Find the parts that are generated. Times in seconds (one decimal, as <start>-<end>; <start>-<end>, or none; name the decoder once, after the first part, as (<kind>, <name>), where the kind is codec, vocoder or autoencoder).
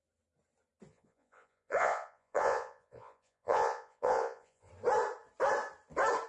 0.9-4.7 (vocoder, Vocos)